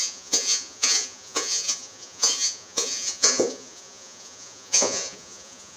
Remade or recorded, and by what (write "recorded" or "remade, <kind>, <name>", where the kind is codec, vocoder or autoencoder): remade, vocoder, Vocos